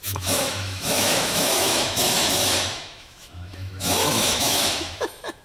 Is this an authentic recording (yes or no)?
no